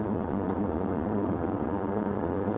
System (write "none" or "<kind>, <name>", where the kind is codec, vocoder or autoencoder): vocoder, Vocos